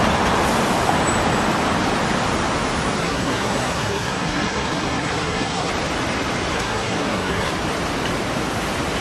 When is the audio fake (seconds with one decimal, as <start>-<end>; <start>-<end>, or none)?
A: 3.0-5.7; 6.5-7.5